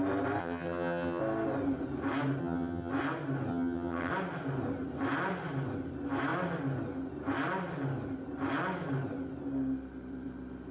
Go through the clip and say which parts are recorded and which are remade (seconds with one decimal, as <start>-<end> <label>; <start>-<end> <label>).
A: 0.0-0.4 recorded; 0.4-1.2 remade; 1.2-2.4 recorded; 2.4-2.9 remade; 2.9-3.5 recorded; 3.5-4.1 remade; 4.1-10.7 recorded